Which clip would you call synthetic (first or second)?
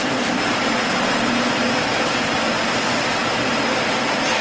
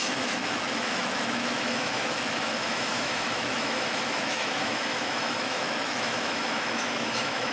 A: second